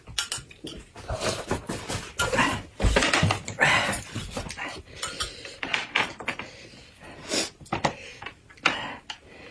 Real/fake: real